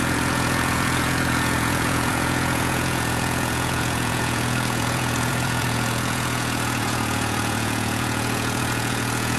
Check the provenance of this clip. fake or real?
fake